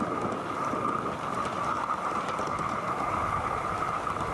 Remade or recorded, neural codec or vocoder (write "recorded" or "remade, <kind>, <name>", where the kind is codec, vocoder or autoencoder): recorded